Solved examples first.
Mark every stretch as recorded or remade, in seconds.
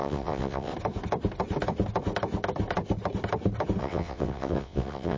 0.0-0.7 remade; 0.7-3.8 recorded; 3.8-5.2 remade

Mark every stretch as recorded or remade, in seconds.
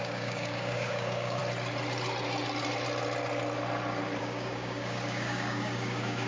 0.0-1.4 remade; 1.4-4.2 recorded; 4.2-6.3 remade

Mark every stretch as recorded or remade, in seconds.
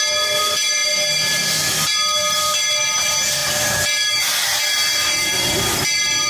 0.0-6.3 recorded